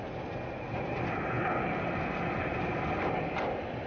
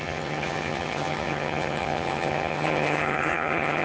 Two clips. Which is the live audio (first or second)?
first